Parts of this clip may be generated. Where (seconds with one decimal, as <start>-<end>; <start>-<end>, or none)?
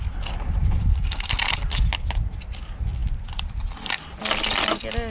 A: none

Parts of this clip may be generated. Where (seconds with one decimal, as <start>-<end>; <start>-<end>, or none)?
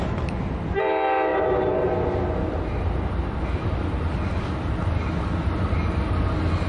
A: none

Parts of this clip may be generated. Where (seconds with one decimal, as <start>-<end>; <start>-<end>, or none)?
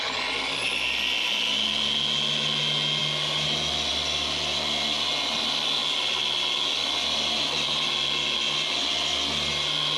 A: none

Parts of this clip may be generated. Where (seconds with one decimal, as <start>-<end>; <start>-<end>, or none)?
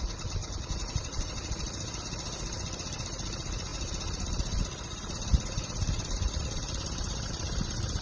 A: 0.4-2.0; 3.7-7.3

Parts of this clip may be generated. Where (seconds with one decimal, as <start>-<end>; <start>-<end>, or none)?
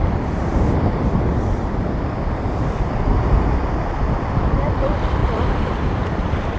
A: 0.5-3.6; 5.2-6.6